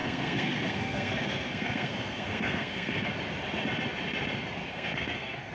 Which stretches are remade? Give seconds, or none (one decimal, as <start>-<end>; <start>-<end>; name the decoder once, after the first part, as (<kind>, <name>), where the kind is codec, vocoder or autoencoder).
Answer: 0.0-3.1 (codec, SNAC); 4.7-5.5